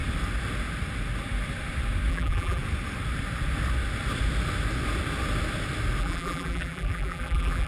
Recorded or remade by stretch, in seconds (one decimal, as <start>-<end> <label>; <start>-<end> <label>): 0.0-2.1 recorded; 2.1-2.6 remade; 2.6-6.0 recorded; 6.0-7.7 remade